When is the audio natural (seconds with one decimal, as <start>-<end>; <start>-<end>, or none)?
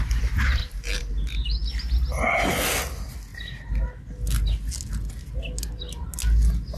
0.0-0.6; 1.1-6.8